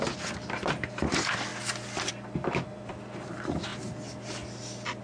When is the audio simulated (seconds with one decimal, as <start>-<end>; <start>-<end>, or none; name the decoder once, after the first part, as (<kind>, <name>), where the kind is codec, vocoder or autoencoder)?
none

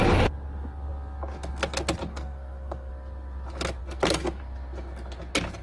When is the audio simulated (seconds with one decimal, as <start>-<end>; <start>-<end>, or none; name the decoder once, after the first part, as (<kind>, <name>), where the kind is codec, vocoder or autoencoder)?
2.1-2.9 (codec, SNAC); 3.8-4.4

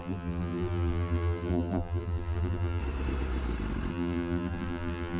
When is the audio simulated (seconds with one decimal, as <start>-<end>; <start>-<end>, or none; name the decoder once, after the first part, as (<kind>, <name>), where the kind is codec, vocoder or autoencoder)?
0.0-2.8 (vocoder, BigVGAN v2); 3.9-5.2

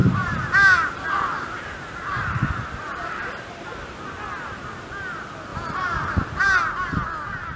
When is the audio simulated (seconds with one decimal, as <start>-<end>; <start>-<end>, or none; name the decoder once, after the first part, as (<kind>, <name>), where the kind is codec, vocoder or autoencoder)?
0.0-3.8 (vocoder, BigVGAN v2); 5.5-6.4

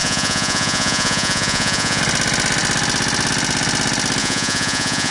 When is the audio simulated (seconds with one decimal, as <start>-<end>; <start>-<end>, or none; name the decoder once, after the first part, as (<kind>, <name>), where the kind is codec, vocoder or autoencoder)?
0.0-2.0 (vocoder, Vocos); 4.2-5.1

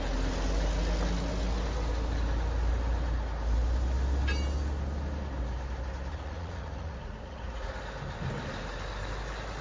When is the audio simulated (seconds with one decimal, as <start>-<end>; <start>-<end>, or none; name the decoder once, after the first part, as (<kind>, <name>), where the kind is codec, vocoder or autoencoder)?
6.1-7.7 (vocoder, Vocos)

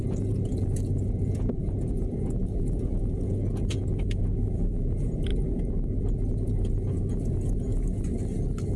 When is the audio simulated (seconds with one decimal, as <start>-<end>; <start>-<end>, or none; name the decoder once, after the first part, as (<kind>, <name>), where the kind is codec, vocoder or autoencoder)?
0.0-5.3 (vocoder, Vocos); 6.0-7.7